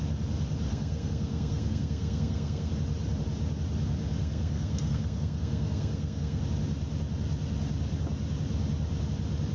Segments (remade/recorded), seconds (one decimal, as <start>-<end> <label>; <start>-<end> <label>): 0.0-0.7 recorded; 0.7-2.7 remade; 2.7-4.2 recorded; 4.2-6.4 remade; 6.4-9.5 recorded

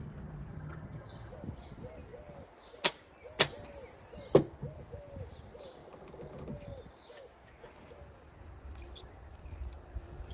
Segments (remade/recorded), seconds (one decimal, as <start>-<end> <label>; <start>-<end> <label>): 0.0-0.5 recorded; 0.5-1.3 remade; 1.3-10.3 recorded

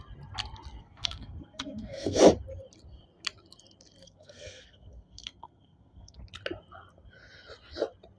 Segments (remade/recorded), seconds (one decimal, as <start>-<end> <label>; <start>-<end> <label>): 0.0-0.8 recorded; 0.8-2.2 remade; 2.2-4.0 recorded; 4.0-6.2 remade; 6.2-8.2 recorded

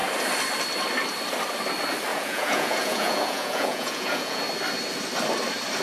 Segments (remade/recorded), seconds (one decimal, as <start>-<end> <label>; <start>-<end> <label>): 0.0-2.1 recorded; 2.1-4.4 remade; 4.4-5.8 recorded

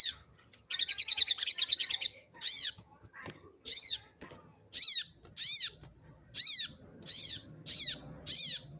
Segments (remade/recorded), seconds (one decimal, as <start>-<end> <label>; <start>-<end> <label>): 0.0-4.8 remade; 4.8-6.9 recorded; 6.9-7.8 remade; 7.8-8.8 recorded

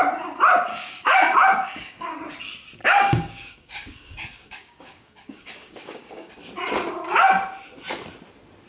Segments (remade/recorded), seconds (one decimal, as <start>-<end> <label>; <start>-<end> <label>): 0.0-0.7 recorded; 0.7-2.2 remade; 2.2-2.8 recorded; 2.8-6.3 remade; 6.3-8.7 recorded

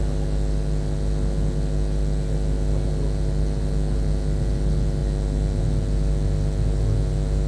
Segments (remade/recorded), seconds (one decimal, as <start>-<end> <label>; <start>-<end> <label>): 0.0-7.5 recorded

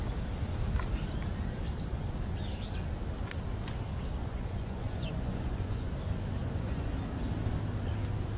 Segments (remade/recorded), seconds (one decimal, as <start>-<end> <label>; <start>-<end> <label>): 0.0-4.2 recorded; 4.2-5.9 remade; 5.9-6.4 recorded; 6.4-6.9 remade; 6.9-8.4 recorded